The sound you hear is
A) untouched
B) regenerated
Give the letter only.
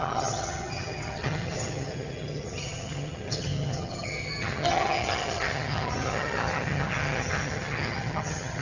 B